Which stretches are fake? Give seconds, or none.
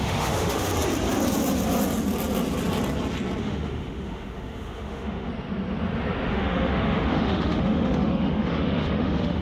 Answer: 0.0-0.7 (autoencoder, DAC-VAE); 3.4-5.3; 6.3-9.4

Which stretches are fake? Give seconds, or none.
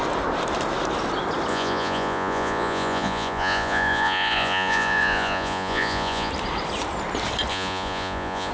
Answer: 1.5-6.3 (vocoder, Vocos); 7.5-8.5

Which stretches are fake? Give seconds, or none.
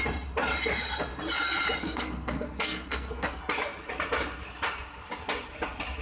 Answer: 1.8-3.4 (codec, SNAC)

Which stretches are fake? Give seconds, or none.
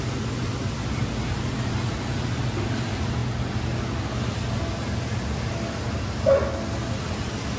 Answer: none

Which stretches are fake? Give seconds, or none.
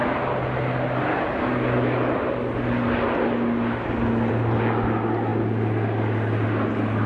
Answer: none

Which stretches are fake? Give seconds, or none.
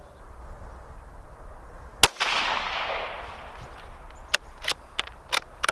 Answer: none